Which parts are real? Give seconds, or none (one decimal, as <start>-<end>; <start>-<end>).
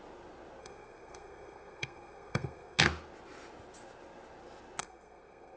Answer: 0.0-0.6; 2.8-4.8